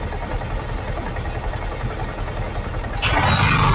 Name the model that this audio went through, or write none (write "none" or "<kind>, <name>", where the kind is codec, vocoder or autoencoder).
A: none